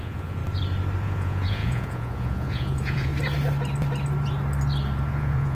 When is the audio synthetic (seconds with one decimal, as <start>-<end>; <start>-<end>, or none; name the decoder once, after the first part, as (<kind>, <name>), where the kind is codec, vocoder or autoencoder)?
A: 0.0-0.4 (vocoder, Vocos); 1.0-3.1; 5.1-5.5